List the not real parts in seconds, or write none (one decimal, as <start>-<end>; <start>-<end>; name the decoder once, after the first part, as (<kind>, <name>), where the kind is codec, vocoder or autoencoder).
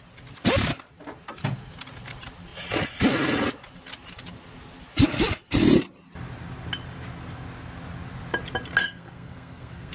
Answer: 8.8-9.9 (codec, SNAC)